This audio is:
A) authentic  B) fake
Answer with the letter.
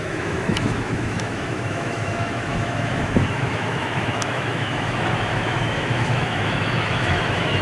B